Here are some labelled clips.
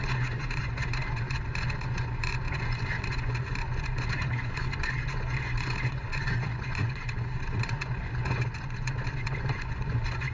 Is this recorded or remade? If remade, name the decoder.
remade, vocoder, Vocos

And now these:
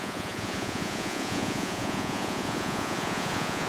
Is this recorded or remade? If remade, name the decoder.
remade, vocoder, Vocos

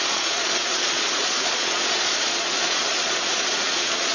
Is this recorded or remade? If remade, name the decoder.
remade, vocoder, Vocos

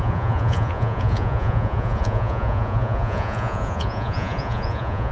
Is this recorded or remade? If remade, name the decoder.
remade, vocoder, Vocos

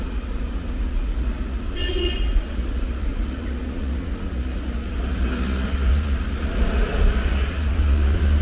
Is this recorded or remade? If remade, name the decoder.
remade, vocoder, Vocos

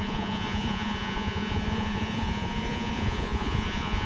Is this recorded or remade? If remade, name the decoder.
remade, vocoder, Vocos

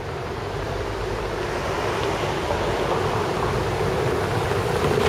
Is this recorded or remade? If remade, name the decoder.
recorded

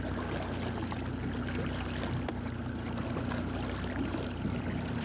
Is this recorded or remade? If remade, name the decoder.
recorded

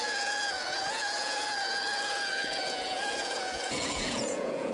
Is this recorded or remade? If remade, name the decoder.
remade, vocoder, Vocos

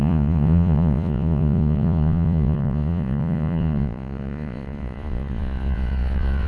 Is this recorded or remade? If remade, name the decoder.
remade, vocoder, Vocos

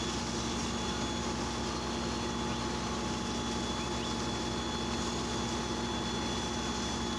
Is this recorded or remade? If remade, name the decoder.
recorded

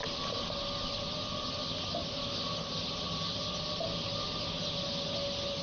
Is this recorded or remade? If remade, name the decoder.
recorded